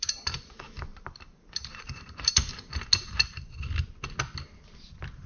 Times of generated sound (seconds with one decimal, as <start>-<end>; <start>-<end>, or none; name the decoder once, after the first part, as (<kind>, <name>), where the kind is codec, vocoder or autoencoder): 0.9-2.5 (vocoder, BigVGAN v2)